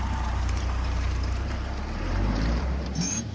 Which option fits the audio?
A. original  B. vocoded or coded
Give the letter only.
B